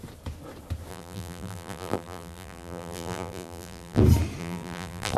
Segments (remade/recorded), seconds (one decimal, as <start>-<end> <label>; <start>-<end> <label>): 0.0-0.9 recorded; 0.9-4.0 remade; 4.0-4.4 recorded; 4.4-5.2 remade